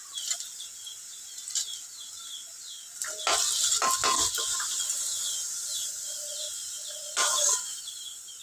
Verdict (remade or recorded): recorded